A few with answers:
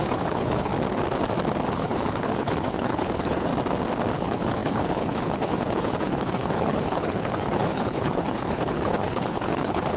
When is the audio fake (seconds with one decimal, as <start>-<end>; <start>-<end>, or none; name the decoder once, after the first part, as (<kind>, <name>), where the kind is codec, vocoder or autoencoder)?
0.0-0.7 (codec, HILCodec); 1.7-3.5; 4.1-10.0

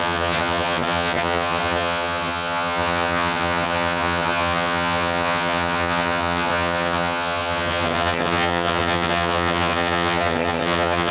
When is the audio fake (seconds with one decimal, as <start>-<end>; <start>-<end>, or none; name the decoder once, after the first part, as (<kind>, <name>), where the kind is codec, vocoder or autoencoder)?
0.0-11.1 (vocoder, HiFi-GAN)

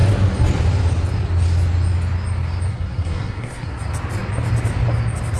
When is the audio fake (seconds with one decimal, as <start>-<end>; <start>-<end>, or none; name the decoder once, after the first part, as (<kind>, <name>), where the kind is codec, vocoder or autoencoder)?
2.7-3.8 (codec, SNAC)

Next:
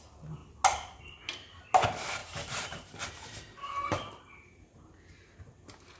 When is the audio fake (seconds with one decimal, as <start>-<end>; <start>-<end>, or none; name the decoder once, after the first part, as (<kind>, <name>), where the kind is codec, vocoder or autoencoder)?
2.2-4.9 (vocoder, BigVGAN v2)